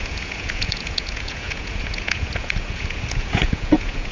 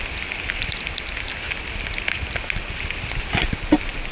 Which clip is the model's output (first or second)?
first